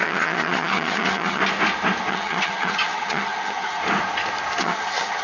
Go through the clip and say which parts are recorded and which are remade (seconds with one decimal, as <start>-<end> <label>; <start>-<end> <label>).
0.0-1.4 remade; 1.4-2.1 recorded; 2.1-3.8 remade; 3.8-4.6 recorded; 4.6-5.2 remade